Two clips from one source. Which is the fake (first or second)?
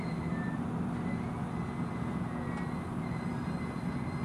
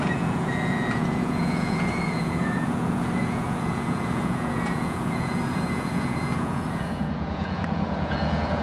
second